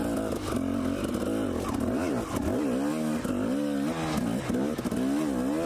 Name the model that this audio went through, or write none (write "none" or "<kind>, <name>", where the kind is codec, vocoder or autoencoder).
none